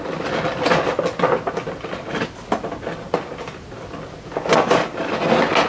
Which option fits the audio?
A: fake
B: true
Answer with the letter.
B